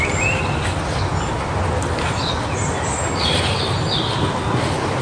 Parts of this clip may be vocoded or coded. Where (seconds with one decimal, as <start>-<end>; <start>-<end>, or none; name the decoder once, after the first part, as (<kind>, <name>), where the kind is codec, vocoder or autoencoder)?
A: none